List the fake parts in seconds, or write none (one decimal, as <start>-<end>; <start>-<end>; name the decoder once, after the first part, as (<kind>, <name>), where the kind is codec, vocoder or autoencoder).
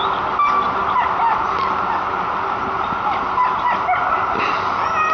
none